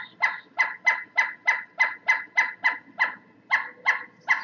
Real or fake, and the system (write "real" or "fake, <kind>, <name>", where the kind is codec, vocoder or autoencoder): real